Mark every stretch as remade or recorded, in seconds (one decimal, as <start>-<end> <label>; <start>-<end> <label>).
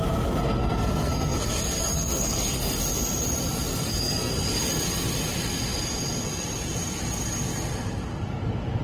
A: 0.0-0.6 recorded; 0.6-1.5 remade; 1.5-1.9 recorded; 1.9-2.8 remade; 2.8-3.7 recorded; 3.7-4.3 remade; 4.3-8.8 recorded